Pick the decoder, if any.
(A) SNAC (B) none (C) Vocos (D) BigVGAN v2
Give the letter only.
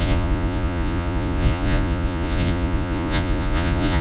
C